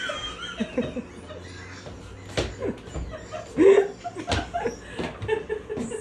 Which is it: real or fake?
real